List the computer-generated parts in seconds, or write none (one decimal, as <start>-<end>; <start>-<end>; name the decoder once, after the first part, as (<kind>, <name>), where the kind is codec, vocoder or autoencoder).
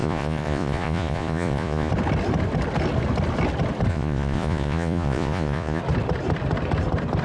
0.0-1.9 (vocoder, Vocos); 3.9-5.8